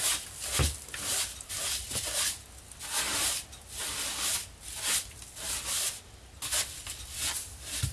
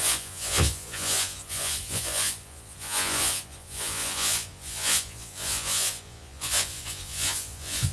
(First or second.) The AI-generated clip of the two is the second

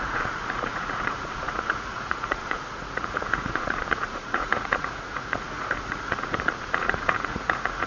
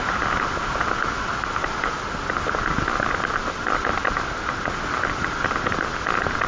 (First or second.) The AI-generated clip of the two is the first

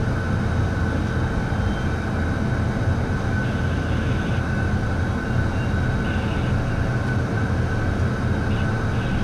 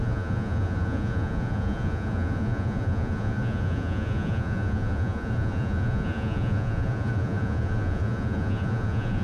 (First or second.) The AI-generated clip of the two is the second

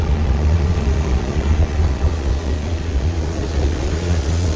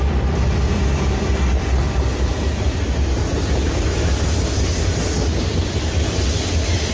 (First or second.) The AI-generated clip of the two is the first